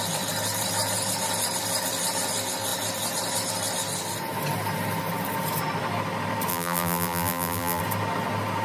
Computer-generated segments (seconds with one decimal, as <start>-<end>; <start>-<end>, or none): 6.5-7.8